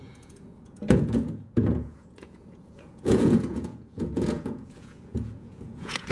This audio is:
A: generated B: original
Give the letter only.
A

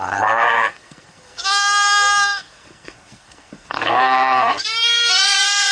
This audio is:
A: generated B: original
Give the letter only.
A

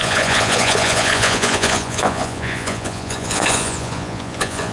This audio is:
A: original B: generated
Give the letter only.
B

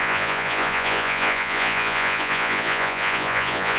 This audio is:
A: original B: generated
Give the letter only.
B